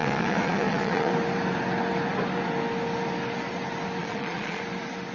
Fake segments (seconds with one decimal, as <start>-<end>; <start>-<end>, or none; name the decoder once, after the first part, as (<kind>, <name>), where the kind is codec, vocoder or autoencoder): 0.0-1.1 (vocoder, Vocos); 4.0-4.6